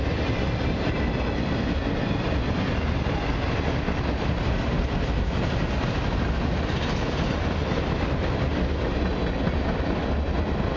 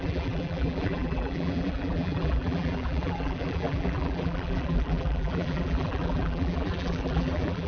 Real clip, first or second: first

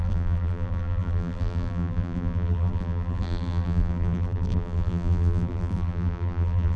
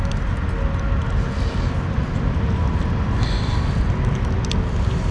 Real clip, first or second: second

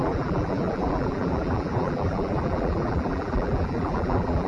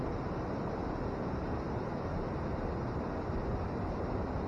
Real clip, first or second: second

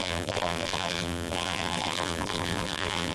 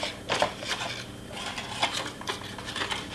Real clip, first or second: second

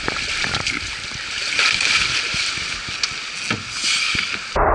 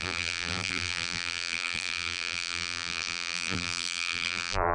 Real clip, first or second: first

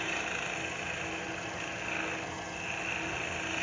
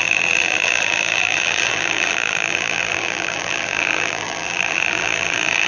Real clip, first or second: first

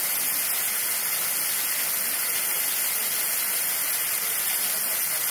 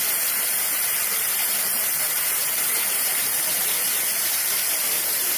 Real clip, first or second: first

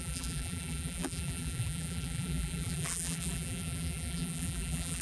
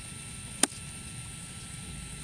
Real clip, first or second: second